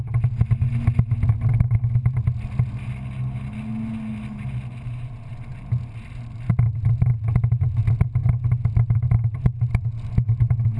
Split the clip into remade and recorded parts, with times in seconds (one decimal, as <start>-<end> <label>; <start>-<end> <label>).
0.0-10.8 recorded